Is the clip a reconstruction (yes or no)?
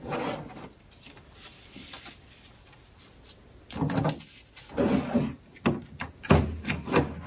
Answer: no